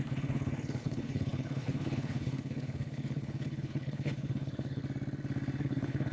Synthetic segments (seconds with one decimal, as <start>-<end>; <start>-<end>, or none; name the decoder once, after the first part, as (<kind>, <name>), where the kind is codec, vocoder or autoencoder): 0.0-4.8 (codec, HILCodec); 5.6-6.1